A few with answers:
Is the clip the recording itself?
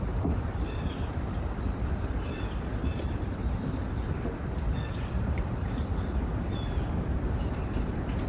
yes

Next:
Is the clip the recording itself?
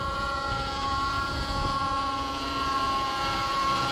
no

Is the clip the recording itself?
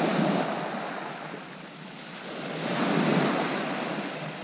yes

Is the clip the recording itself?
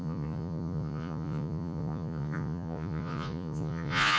no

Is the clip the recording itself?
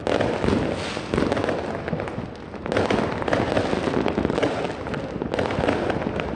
yes